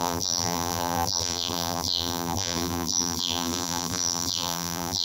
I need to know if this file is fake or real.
fake